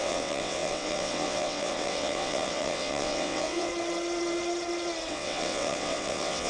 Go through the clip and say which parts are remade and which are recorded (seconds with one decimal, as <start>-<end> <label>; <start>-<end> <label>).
0.0-3.7 remade; 3.7-5.1 recorded; 5.1-6.5 remade